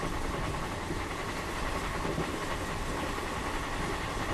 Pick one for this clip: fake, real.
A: real